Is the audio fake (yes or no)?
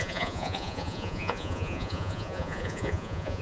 yes